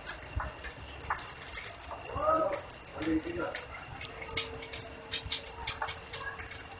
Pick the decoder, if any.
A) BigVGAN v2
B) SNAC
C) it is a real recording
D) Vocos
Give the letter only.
C